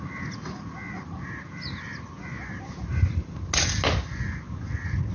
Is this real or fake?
real